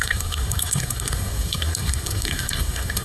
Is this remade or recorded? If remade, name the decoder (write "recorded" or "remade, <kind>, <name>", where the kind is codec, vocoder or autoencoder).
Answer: remade, codec, SNAC